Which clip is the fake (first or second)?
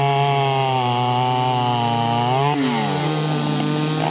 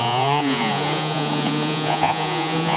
second